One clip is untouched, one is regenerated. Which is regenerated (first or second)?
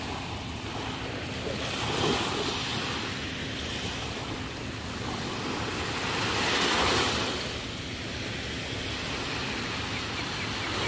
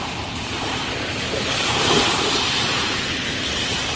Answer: second